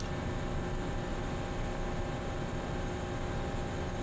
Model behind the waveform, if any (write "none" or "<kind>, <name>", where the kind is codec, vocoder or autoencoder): none